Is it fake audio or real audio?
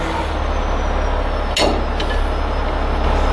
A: real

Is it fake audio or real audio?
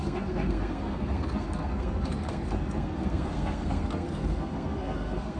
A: fake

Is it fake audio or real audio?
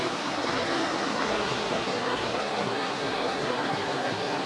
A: fake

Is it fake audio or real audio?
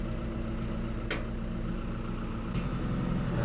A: real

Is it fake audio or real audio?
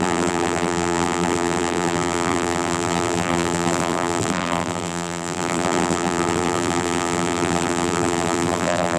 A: fake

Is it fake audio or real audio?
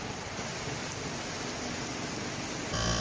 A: real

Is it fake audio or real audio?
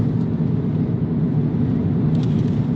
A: real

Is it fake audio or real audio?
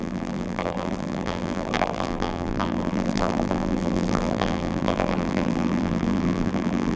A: fake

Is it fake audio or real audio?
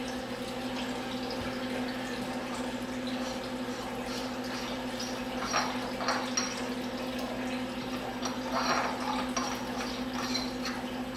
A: real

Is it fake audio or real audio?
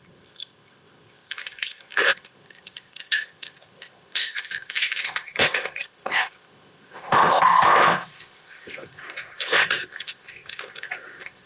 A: fake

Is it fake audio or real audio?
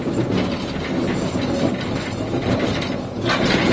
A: real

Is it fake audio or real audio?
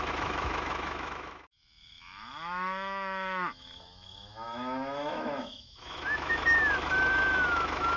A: fake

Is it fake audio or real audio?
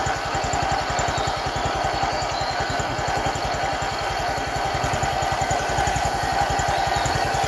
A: real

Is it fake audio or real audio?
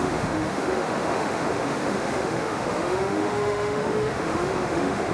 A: fake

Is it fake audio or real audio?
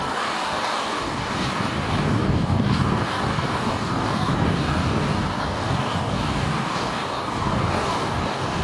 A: fake